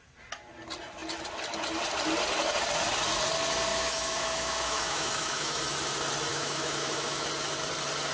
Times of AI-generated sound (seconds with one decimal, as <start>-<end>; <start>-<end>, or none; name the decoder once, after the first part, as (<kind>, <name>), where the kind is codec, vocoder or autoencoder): 3.7-5.6 (autoencoder, DAC-VAE); 6.3-7.3